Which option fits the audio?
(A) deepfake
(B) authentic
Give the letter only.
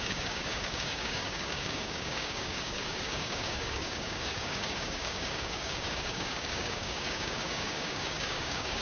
A